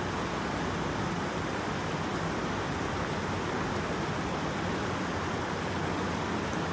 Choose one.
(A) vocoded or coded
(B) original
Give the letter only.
B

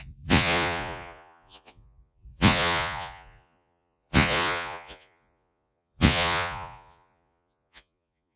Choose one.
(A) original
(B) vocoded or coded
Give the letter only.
B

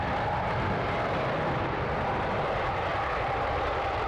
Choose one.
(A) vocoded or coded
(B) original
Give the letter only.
A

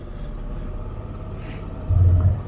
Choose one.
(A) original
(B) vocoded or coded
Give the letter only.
A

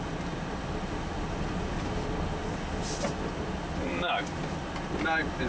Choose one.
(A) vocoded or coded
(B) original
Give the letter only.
B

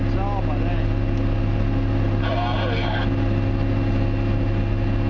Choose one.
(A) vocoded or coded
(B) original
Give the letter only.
B